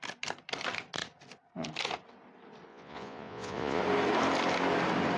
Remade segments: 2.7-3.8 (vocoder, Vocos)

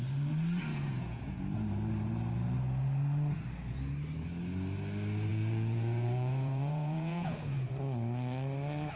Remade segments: 0.7-1.4 (vocoder, Vocos); 5.3-7.7

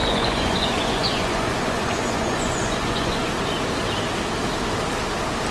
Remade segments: 0.0-3.3 (vocoder, Vocos)

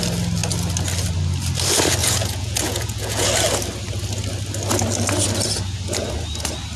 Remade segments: 2.0-3.3 (vocoder, Vocos)

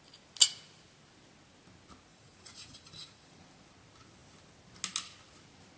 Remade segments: 2.1-3.4 (vocoder, Vocos)